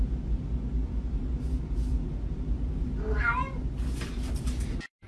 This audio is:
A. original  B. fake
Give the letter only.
A